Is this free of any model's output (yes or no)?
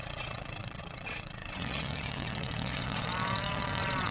no